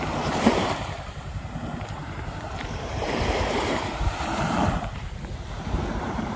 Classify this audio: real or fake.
fake